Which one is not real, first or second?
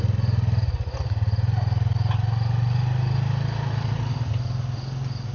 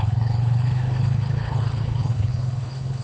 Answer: second